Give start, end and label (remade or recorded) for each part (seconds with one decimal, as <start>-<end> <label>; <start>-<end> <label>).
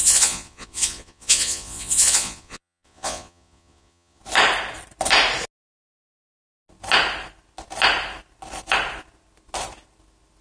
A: 0.0-4.2 remade; 4.2-10.4 recorded